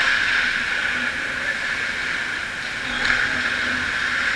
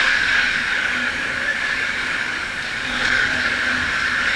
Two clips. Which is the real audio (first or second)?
first